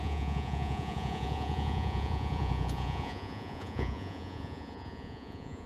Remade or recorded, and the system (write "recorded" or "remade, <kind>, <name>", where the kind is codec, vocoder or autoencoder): remade, vocoder, Vocos